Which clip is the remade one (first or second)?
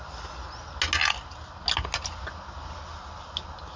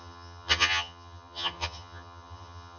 second